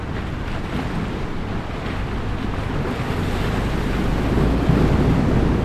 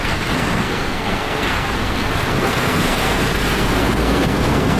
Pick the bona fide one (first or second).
first